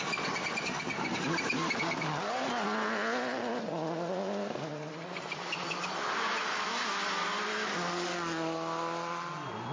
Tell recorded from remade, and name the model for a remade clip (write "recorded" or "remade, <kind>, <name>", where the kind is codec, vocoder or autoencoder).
recorded